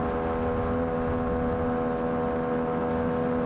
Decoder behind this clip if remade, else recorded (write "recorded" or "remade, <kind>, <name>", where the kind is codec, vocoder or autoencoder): recorded